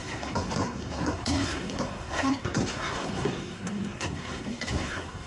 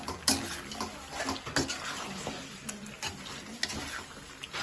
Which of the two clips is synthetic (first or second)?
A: first